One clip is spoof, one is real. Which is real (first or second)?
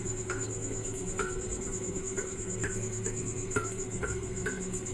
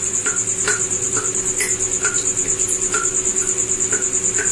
second